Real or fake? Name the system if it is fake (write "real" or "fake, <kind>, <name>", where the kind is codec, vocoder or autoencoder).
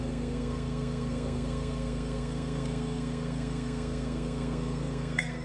fake, codec, SNAC